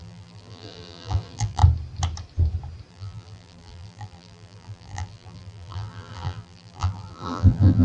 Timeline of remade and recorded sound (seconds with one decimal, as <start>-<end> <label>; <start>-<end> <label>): 0.0-1.6 remade; 1.6-2.9 recorded; 2.9-7.8 remade